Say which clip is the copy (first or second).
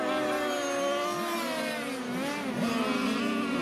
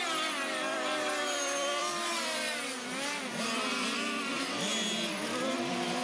second